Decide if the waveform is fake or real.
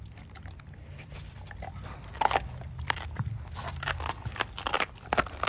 fake